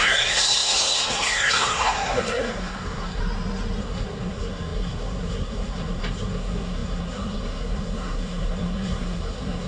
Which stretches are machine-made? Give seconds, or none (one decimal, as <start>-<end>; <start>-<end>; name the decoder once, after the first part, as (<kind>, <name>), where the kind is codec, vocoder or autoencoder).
0.0-3.2 (codec, SNAC); 3.8-9.7